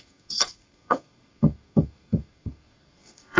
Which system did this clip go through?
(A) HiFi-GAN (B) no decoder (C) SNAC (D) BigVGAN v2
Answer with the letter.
C